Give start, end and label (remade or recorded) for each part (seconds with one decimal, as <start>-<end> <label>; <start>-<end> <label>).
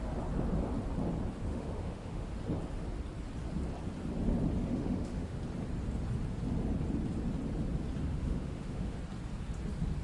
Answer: 0.0-1.5 recorded; 1.5-2.3 remade; 2.3-4.6 recorded; 4.6-5.4 remade; 5.4-8.1 recorded; 8.1-9.0 remade; 9.0-10.0 recorded